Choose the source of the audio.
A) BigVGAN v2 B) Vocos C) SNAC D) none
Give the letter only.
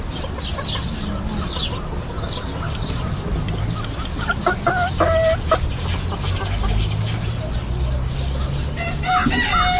D